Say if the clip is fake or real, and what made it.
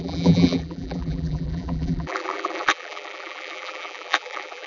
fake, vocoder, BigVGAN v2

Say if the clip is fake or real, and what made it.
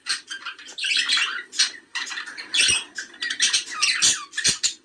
real